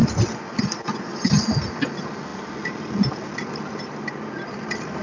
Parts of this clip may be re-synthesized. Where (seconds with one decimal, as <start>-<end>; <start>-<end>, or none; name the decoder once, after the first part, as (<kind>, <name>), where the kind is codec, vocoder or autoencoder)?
none